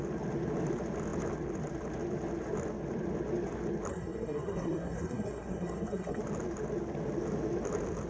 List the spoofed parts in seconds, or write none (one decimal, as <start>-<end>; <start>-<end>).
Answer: 3.9-6.2